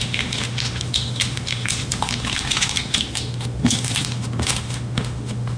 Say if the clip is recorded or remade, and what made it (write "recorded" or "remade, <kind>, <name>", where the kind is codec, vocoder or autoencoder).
remade, autoencoder, DAC-VAE